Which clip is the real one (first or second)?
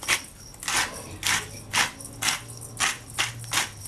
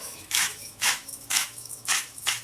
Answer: first